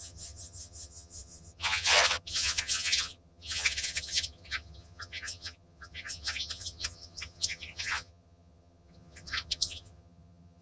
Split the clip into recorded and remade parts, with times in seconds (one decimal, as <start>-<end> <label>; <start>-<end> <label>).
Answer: 0.0-10.6 remade